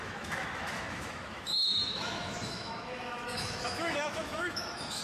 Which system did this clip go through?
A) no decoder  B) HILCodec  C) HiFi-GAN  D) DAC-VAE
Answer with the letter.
D